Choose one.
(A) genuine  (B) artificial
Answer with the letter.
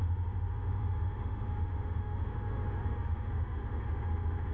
B